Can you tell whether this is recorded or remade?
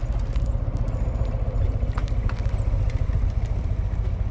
recorded